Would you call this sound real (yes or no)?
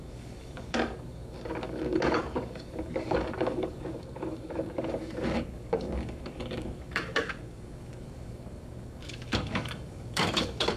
no